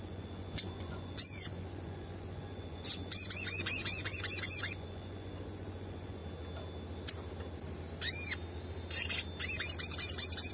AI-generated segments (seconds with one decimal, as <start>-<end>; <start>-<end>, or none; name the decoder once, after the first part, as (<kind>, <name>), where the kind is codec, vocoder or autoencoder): 0.0-6.2 (vocoder, Vocos)